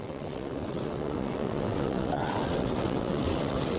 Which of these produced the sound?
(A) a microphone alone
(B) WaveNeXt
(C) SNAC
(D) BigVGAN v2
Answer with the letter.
B